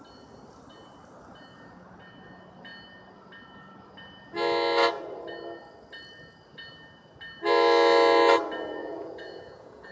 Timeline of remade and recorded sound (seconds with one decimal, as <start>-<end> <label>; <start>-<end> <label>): 0.0-8.8 recorded; 8.8-9.9 remade